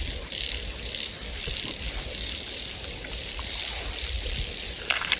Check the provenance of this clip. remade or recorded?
remade